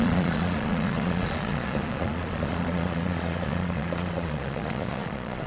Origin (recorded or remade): remade